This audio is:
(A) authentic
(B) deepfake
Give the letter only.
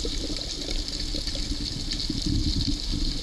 A